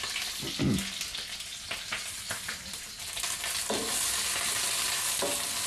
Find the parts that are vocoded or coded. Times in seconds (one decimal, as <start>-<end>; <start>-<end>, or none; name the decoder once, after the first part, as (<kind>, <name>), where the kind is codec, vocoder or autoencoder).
1.5-2.8 (vocoder, BigVGAN v2)